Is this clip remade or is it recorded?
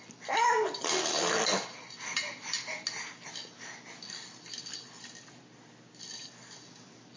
recorded